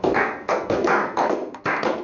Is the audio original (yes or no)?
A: no